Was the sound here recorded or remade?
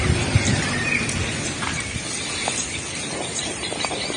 recorded